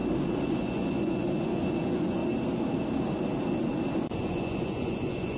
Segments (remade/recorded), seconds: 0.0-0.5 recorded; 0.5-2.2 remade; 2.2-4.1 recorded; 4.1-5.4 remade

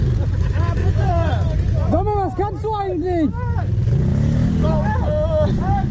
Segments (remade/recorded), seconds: 0.0-0.8 recorded; 0.8-1.3 remade; 1.3-5.9 recorded

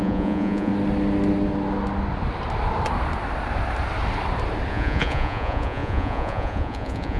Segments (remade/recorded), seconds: 0.0-0.7 remade; 0.7-4.7 recorded; 4.7-7.2 remade